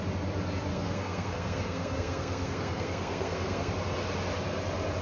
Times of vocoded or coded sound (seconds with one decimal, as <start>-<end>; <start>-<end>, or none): 0.7-3.7